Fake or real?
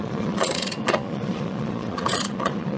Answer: fake